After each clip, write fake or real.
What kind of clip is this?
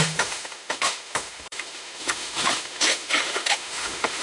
fake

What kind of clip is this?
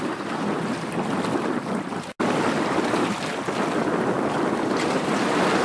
real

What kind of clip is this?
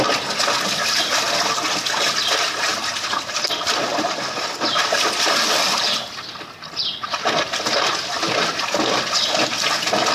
real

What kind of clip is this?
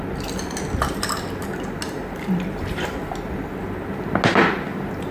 real